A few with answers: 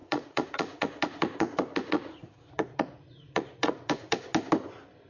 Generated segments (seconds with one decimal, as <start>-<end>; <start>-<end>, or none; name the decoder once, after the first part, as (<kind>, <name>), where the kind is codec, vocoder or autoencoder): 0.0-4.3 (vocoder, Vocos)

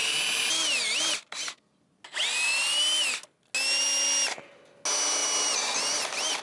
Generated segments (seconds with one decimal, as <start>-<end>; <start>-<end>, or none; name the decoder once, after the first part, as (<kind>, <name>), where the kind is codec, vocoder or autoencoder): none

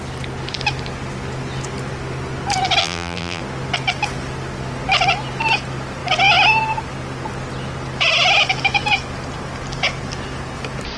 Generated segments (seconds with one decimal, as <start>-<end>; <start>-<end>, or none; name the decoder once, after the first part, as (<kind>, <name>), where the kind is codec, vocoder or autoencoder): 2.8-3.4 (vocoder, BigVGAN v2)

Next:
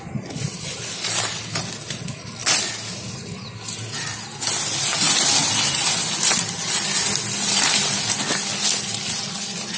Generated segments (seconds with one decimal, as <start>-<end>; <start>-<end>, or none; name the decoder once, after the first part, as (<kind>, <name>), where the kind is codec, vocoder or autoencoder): none

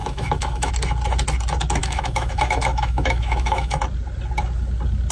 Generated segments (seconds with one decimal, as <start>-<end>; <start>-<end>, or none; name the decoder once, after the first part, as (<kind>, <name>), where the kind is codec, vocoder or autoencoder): 0.0-0.7 (autoencoder, DAC-VAE); 1.8-3.8

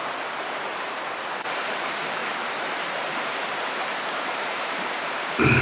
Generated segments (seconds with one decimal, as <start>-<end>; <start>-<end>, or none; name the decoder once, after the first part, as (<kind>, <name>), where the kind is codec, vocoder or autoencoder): 0.0-5.6 (vocoder, BigVGAN v2)

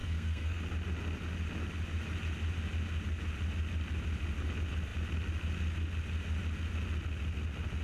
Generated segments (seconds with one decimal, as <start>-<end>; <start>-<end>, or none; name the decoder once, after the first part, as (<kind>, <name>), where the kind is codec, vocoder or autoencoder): 0.0-0.6 (codec, SNAC)